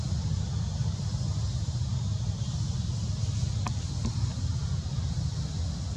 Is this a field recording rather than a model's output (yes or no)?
yes